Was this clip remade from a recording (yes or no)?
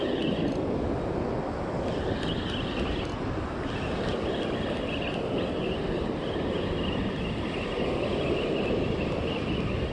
no